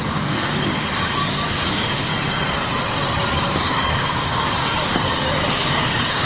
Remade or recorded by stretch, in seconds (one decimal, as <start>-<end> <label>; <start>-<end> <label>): 0.0-2.1 remade; 2.1-3.3 recorded; 3.3-6.3 remade